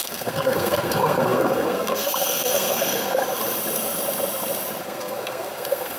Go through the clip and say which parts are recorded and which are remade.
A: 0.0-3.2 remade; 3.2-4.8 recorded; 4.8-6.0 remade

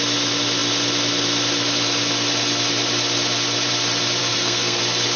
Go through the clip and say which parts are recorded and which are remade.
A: 0.0-4.2 recorded; 4.2-4.8 remade; 4.8-5.2 recorded